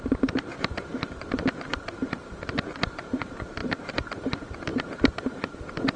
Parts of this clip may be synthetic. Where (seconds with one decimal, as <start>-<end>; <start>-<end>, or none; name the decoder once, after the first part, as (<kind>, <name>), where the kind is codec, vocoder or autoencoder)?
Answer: 0.0-0.9 (vocoder, BigVGAN v2); 1.5-6.0